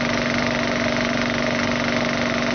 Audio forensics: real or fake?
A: real